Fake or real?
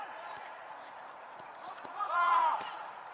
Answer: fake